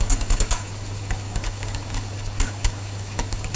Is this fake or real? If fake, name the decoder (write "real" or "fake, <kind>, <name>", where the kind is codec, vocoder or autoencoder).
fake, codec, DAC